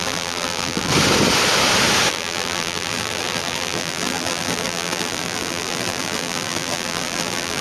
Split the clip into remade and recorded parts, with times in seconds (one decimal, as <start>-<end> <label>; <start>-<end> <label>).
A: 0.0-0.9 remade; 0.9-2.1 recorded; 2.1-7.6 remade